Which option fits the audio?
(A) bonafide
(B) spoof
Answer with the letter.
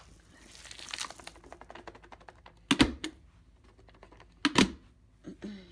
A